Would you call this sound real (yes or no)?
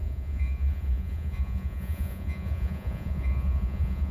no